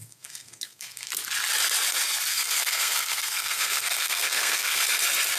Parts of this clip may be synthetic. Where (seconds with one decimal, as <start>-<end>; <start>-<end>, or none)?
0.0-1.1; 2.3-4.8